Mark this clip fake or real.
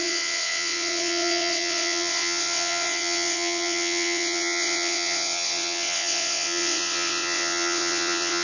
fake